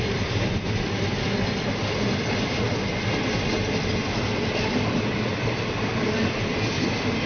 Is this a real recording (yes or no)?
yes